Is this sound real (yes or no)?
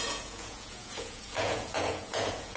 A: no